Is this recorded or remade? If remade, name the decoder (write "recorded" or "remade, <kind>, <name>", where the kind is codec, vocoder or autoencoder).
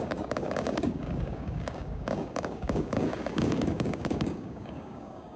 remade, codec, DAC